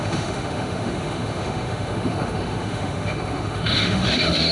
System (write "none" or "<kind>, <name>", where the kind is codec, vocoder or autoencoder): autoencoder, DAC-VAE